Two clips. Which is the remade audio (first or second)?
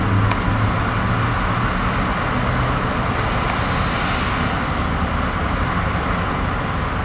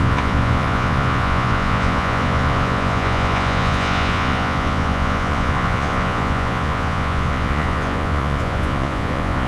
second